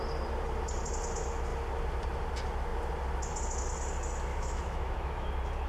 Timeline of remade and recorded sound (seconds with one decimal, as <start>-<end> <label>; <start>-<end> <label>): 0.0-4.3 recorded; 4.3-5.3 remade; 5.3-5.7 recorded